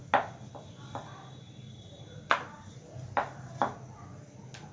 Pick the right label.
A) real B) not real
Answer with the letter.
A